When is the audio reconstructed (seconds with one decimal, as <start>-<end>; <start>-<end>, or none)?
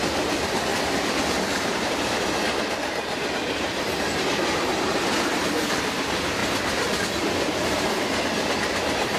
0.7-2.2; 4.7-5.4